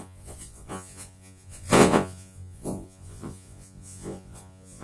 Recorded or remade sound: remade